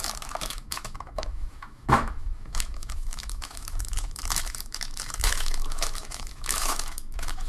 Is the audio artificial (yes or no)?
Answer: yes